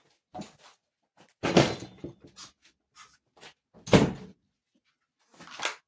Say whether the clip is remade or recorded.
recorded